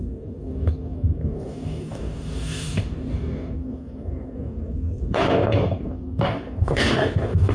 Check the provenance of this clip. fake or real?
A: fake